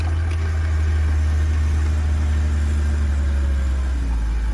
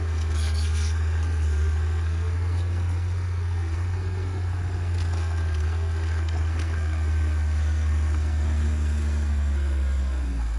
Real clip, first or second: first